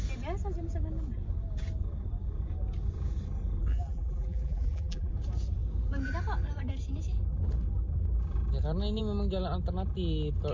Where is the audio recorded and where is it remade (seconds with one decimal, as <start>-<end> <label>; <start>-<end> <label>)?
0.0-3.7 recorded; 3.7-5.1 remade; 5.1-10.5 recorded